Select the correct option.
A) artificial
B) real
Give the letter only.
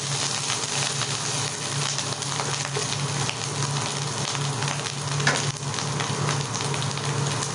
B